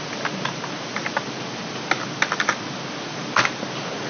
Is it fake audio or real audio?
real